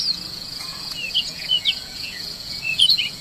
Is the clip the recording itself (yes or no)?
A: no